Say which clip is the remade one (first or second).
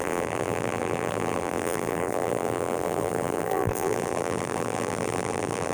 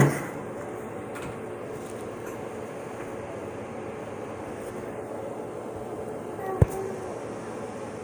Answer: first